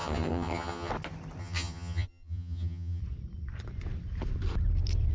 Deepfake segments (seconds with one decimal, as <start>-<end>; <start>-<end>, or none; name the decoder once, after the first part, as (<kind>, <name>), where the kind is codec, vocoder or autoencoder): 0.0-0.9 (vocoder, HiFi-GAN); 1.4-3.0